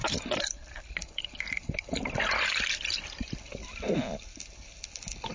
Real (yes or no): yes